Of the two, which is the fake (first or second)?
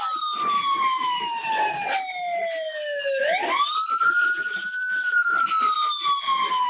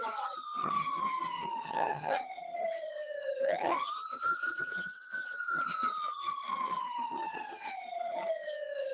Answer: second